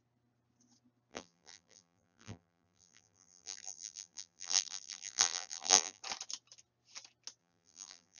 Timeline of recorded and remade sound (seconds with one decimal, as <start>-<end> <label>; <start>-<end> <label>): 0.0-1.1 recorded; 1.1-6.0 remade; 6.0-7.4 recorded; 7.4-8.2 remade